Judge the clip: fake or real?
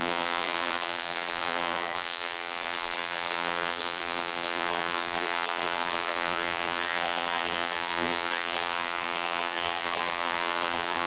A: fake